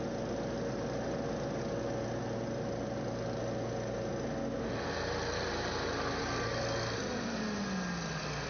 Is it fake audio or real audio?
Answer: real